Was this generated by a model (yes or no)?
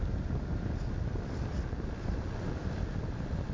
no